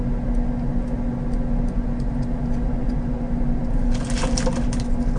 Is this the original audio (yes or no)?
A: yes